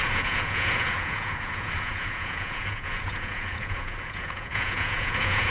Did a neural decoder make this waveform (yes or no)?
yes